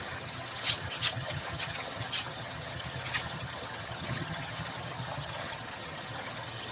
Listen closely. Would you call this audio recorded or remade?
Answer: remade